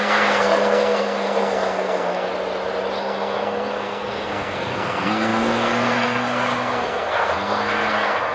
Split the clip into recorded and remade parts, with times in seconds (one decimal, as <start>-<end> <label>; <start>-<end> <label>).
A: 0.0-2.3 remade; 2.3-3.0 recorded; 3.0-8.3 remade